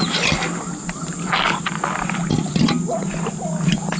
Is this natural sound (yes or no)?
yes